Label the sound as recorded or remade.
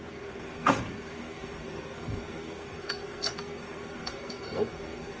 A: remade